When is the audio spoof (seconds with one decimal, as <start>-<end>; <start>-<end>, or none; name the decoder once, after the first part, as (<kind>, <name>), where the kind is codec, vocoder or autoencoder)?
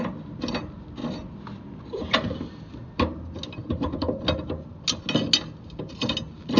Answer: none